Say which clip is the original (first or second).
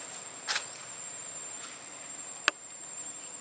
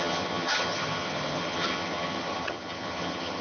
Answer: first